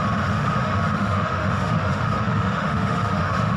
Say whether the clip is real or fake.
fake